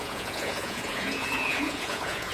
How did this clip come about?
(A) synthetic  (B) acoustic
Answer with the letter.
A